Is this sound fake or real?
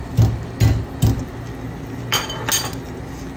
real